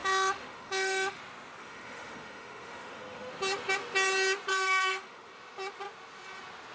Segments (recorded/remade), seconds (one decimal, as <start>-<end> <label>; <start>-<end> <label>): 0.0-1.2 remade; 1.2-1.6 recorded; 1.6-3.3 remade; 3.3-4.5 recorded; 4.5-5.3 remade; 5.3-6.7 recorded